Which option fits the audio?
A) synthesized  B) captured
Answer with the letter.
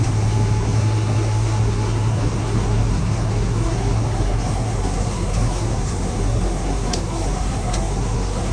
A